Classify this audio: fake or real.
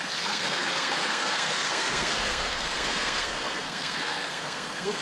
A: fake